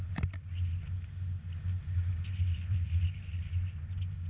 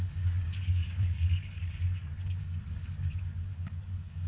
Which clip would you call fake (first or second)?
second